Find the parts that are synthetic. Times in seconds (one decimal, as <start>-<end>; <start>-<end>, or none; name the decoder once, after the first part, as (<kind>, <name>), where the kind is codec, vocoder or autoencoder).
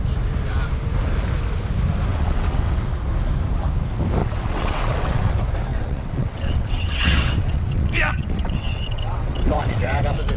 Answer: 2.1-2.9 (vocoder, WaveNeXt); 4.2-5.3; 5.7-10.0